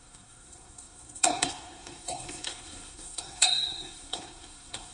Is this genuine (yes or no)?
no